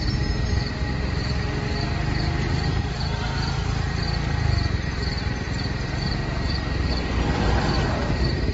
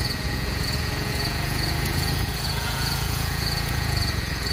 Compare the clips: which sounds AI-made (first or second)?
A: second